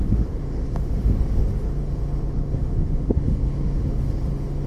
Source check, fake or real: fake